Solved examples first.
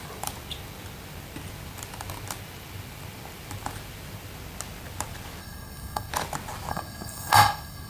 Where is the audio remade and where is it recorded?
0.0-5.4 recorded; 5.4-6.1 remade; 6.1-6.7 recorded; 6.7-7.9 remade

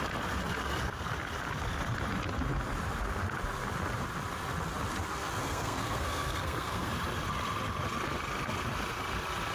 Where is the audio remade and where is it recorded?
0.0-5.4 recorded; 5.4-6.9 remade; 6.9-9.5 recorded

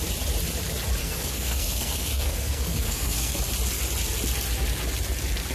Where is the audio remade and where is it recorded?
0.0-1.0 recorded; 1.0-3.4 remade; 3.4-5.5 recorded

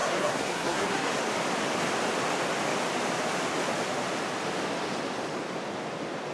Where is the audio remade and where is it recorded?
0.0-1.1 remade; 1.1-6.3 recorded

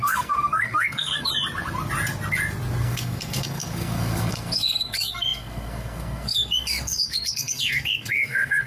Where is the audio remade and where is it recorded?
0.0-1.3 remade; 1.3-2.8 recorded; 2.8-8.7 remade